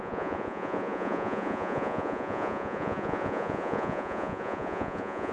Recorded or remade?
remade